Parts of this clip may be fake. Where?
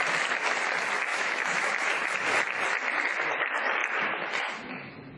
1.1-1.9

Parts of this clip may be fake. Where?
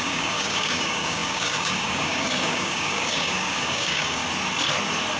0.0-4.2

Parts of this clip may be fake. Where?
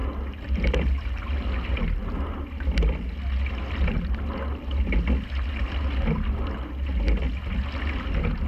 none